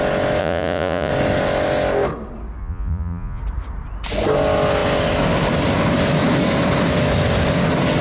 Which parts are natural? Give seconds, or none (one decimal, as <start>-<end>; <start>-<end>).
0.0-0.4; 1.1-2.6; 3.4-8.0